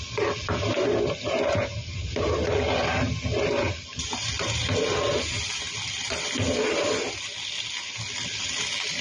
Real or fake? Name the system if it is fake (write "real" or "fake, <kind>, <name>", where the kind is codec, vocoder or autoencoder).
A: real